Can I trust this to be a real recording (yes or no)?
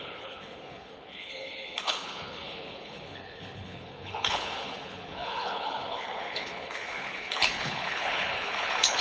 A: no